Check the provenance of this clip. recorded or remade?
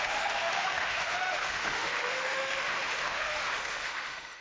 remade